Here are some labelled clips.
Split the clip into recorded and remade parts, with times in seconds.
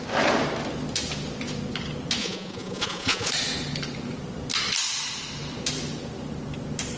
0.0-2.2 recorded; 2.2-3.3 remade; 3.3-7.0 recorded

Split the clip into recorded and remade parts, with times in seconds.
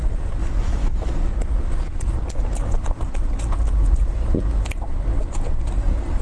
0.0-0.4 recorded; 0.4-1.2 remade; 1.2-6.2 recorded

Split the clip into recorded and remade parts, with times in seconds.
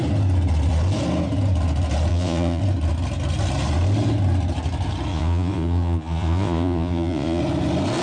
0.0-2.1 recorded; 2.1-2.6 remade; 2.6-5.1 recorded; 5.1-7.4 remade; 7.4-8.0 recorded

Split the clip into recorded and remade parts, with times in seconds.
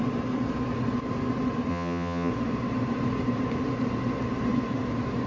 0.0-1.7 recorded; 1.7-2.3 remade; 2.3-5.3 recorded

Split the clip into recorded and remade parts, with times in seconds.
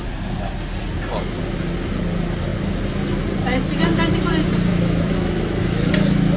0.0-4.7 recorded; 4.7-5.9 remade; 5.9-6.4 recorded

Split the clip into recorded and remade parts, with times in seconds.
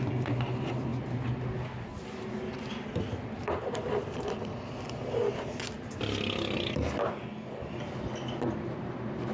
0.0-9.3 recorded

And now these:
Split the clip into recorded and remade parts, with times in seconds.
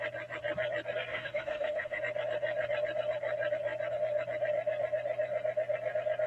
0.0-1.1 recorded; 1.1-2.0 remade; 2.0-6.3 recorded